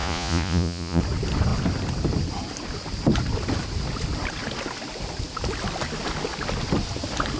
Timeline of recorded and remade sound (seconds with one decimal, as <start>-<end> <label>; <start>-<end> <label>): 0.0-1.0 remade; 1.0-7.4 recorded